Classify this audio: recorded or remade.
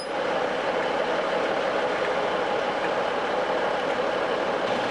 recorded